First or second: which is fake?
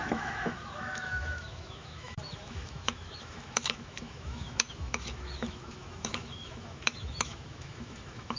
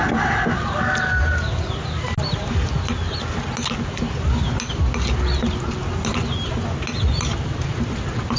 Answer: first